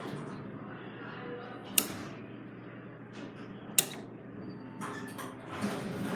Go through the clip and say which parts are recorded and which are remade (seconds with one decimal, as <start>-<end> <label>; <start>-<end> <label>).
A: 0.0-1.6 recorded; 1.6-2.2 remade; 2.2-6.2 recorded